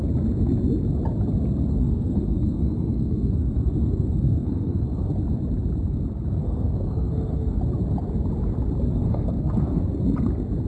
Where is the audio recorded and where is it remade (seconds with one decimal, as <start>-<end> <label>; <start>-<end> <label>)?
0.0-1.7 recorded; 1.7-5.1 remade; 5.1-6.4 recorded; 6.4-7.6 remade; 7.6-8.9 recorded; 8.9-9.8 remade; 9.8-10.7 recorded